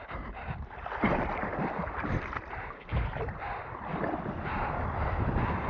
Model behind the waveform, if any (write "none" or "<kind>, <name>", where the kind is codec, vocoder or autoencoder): none